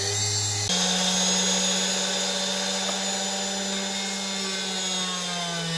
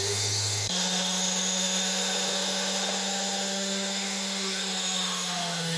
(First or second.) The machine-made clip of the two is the second